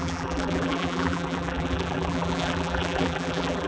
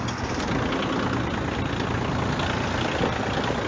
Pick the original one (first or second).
second